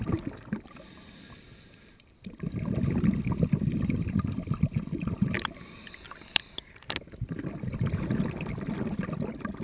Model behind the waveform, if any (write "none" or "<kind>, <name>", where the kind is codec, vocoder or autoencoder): vocoder, BigVGAN v2